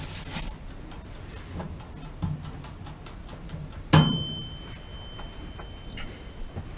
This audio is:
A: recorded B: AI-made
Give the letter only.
A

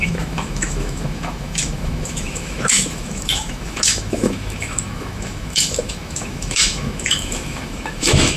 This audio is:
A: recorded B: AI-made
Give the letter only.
B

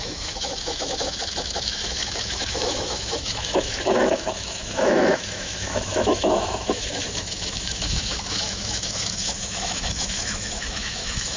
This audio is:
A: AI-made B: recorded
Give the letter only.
A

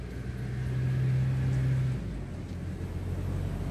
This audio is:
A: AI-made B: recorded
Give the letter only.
B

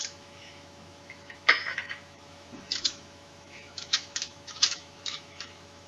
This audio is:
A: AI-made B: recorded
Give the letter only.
A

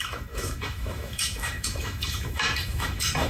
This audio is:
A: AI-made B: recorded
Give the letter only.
A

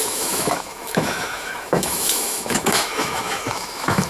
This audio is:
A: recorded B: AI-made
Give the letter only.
B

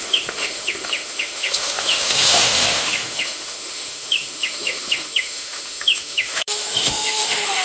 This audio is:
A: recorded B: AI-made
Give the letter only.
B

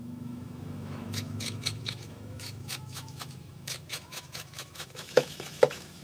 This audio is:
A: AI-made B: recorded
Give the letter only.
A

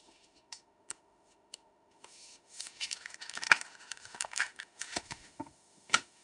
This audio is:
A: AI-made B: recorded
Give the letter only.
A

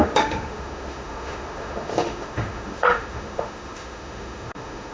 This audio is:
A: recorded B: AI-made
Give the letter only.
B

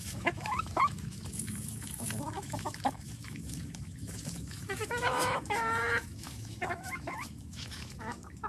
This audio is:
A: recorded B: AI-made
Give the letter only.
B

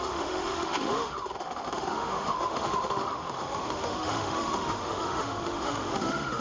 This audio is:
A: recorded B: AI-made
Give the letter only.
B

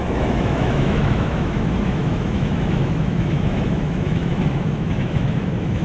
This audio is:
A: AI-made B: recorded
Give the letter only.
A